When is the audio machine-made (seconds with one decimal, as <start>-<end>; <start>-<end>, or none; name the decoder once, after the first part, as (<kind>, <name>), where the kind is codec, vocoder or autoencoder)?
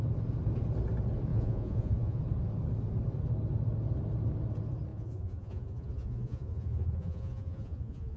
1.3-2.2 (vocoder, Vocos); 4.9-8.2